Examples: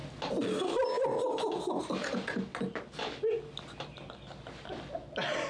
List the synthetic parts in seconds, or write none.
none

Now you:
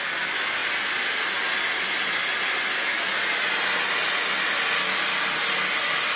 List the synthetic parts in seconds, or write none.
0.6-3.5 (vocoder, BigVGAN v2)